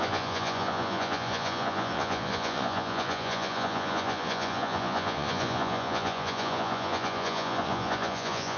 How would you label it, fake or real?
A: fake